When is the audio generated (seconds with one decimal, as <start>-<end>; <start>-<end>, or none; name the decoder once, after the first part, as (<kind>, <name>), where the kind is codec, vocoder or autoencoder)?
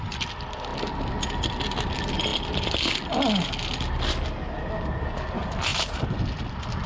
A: 5.7-6.2 (vocoder, BigVGAN v2)